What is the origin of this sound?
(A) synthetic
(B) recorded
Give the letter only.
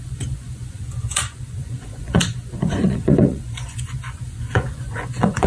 A